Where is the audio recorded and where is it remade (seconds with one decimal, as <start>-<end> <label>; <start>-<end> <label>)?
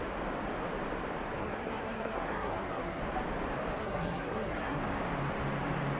0.0-1.4 recorded; 1.4-3.0 remade; 3.0-3.8 recorded; 3.8-4.8 remade; 4.8-6.0 recorded